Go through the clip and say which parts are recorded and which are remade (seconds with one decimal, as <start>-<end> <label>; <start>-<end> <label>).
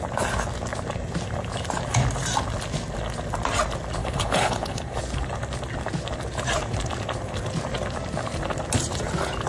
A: 0.0-4.0 recorded; 4.0-5.0 remade; 5.0-9.5 recorded